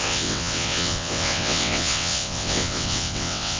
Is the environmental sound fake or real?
fake